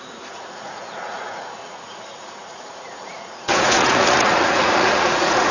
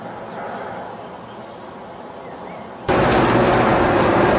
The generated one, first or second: first